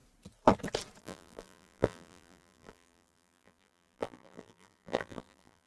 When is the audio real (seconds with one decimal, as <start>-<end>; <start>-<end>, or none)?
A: 0.0-1.0